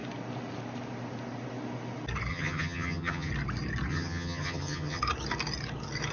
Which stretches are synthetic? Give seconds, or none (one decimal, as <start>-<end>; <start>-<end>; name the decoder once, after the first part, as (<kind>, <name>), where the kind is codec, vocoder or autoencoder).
2.3-3.3 (vocoder, HiFi-GAN); 3.9-5.0